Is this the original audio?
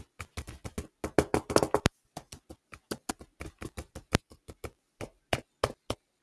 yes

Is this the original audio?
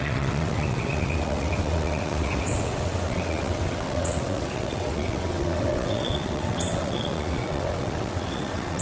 no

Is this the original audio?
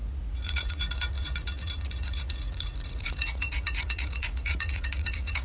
no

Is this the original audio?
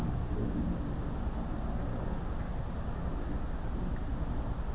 yes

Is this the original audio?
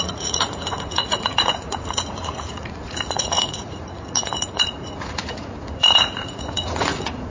no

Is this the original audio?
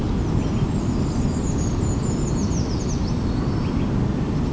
yes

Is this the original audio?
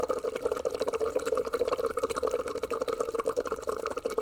no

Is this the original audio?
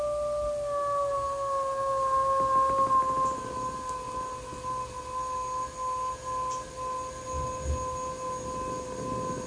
yes